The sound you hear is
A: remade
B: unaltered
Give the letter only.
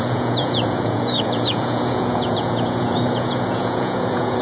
A